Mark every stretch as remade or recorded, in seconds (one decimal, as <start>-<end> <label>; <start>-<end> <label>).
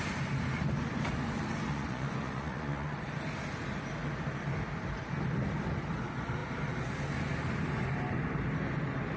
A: 0.0-1.7 recorded; 1.7-3.0 remade; 3.0-9.2 recorded